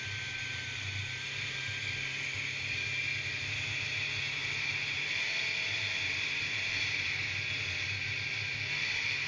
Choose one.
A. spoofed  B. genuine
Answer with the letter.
A